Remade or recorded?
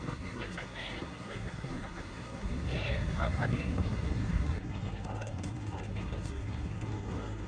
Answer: remade